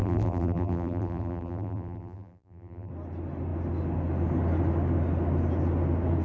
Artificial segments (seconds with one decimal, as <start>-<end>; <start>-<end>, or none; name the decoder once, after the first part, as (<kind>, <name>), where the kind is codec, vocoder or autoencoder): 0.0-2.9 (vocoder, BigVGAN v2)